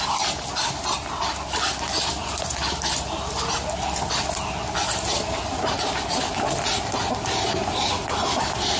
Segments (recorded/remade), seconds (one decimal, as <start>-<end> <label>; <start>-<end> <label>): 0.0-8.8 recorded